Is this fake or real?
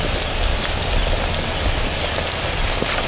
real